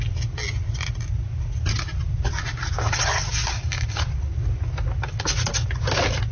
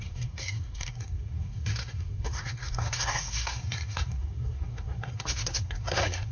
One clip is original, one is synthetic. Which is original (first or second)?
first